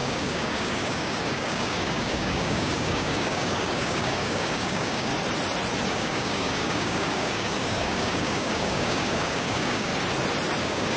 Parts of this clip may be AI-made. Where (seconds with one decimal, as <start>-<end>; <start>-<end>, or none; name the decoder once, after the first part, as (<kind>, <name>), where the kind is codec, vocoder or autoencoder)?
0.0-5.1 (codec, DAC); 5.9-9.9; 10.6-11.0